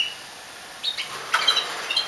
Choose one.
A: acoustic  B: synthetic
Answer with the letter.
A